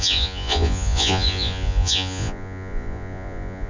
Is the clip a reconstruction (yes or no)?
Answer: yes